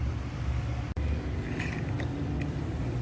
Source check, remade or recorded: recorded